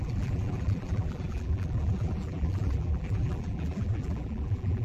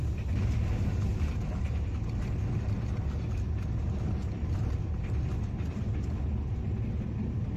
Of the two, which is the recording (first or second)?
second